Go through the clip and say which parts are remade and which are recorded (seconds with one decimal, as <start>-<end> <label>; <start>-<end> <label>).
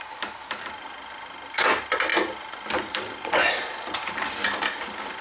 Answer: 0.0-5.2 recorded